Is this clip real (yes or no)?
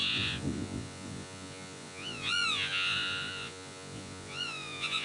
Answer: no